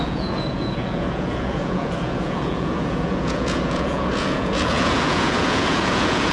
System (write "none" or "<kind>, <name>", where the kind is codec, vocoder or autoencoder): vocoder, Vocos